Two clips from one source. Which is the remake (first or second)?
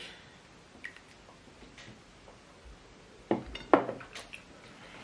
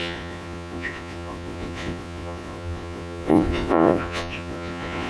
second